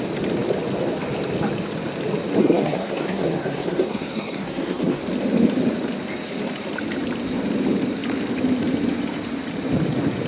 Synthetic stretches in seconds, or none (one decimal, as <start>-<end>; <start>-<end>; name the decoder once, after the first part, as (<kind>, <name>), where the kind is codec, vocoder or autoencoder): 2.4-5.0 (codec, SNAC)